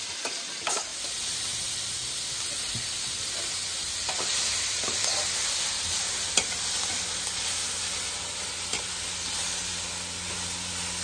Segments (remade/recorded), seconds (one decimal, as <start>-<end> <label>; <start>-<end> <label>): 0.0-0.9 recorded; 0.9-5.7 remade; 5.7-11.0 recorded